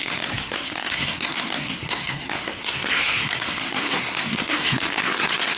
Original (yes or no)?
no